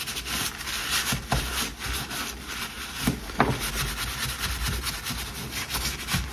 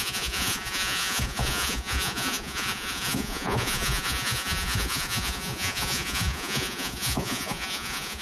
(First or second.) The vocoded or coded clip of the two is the second